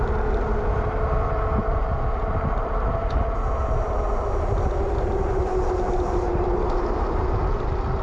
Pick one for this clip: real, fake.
real